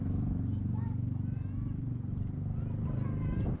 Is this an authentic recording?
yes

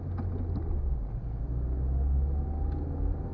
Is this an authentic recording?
yes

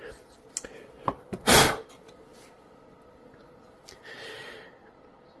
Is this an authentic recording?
yes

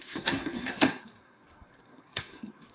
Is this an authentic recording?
no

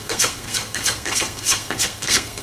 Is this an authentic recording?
no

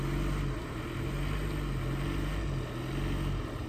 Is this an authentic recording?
yes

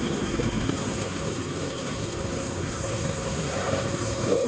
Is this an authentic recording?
no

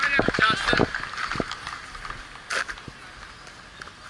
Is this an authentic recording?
yes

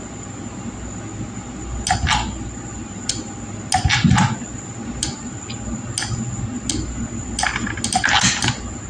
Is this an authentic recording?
yes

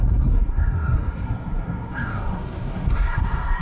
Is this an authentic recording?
no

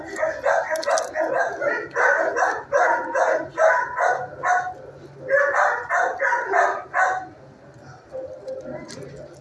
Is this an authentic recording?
yes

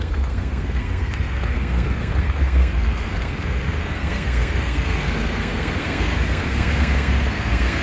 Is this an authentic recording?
no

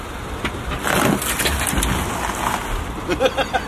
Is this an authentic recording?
yes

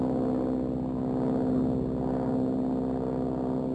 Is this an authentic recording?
yes